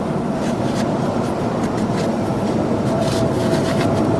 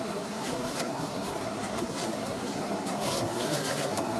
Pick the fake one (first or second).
second